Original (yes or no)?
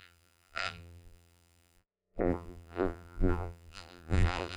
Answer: no